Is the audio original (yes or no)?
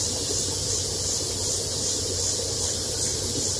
yes